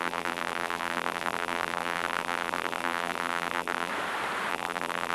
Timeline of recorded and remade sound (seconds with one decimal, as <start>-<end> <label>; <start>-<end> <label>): 0.0-3.9 remade; 3.9-4.5 recorded; 4.5-5.1 remade